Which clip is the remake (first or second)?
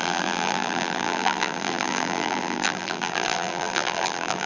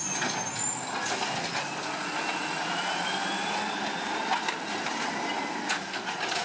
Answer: first